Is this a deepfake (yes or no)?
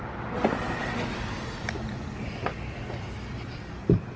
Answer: no